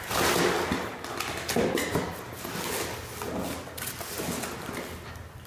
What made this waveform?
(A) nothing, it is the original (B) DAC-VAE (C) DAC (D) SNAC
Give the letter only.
A